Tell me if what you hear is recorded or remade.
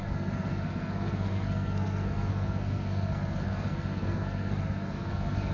remade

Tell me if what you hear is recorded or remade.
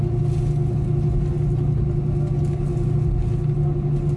recorded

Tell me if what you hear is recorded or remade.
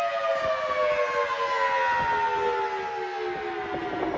recorded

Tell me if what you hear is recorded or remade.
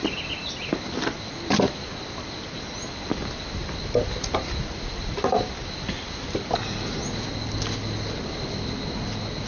recorded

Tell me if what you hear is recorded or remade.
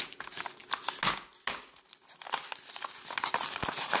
recorded